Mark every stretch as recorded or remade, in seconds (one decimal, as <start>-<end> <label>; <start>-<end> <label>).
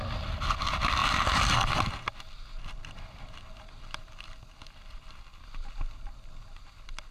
0.0-7.1 recorded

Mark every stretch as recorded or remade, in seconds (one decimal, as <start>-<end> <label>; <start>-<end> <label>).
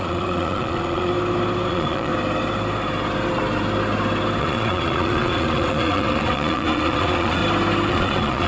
0.0-1.1 remade; 1.1-1.7 recorded; 1.7-2.1 remade; 2.1-4.4 recorded; 4.4-7.4 remade; 7.4-7.9 recorded; 7.9-8.5 remade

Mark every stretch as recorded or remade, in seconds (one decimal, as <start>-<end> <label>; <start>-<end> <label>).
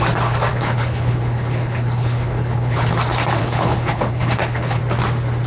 0.0-0.5 recorded; 0.5-2.9 remade; 2.9-3.4 recorded; 3.4-4.8 remade; 4.8-5.5 recorded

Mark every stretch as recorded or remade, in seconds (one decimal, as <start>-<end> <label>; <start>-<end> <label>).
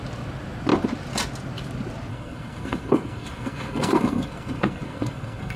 0.0-2.1 recorded; 2.1-5.6 remade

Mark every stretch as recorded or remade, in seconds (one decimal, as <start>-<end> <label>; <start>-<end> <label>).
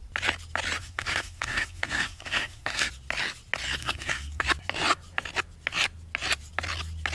0.0-0.8 recorded; 0.8-2.9 remade; 2.9-3.8 recorded; 3.8-4.5 remade; 4.5-7.1 recorded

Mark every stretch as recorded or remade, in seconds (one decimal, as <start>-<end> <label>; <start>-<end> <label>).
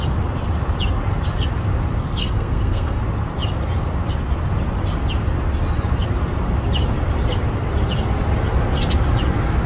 0.0-2.2 recorded; 2.2-3.0 remade; 3.0-9.7 recorded